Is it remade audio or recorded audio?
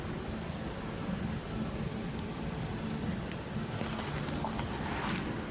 recorded